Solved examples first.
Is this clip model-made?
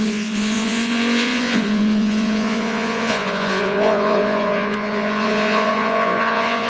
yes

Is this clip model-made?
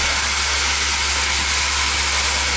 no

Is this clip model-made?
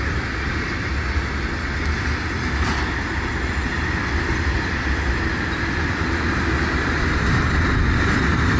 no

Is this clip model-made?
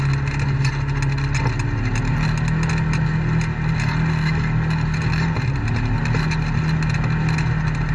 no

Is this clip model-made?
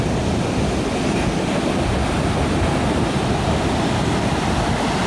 no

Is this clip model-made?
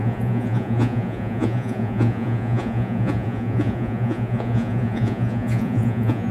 yes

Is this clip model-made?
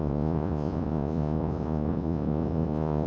yes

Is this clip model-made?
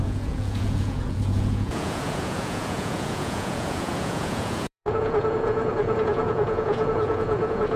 yes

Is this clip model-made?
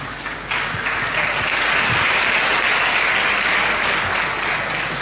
no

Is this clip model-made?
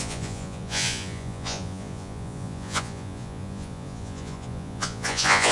yes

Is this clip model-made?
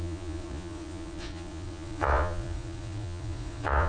yes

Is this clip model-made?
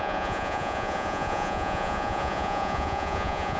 yes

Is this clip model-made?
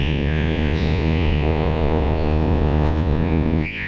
yes